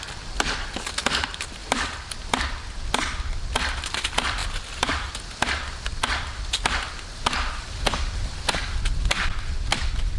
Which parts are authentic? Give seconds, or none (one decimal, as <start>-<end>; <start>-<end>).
0.0-1.6; 2.4-4.4; 5.1-10.2